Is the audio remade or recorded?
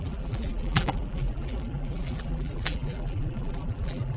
remade